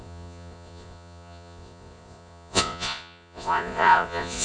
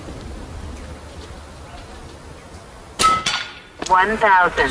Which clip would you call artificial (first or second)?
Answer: first